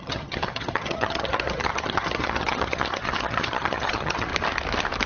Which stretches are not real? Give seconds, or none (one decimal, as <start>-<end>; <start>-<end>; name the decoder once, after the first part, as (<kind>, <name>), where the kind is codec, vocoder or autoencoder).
0.0-4.3 (vocoder, HiFi-GAN)